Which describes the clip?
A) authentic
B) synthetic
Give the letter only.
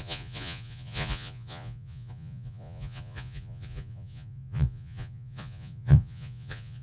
B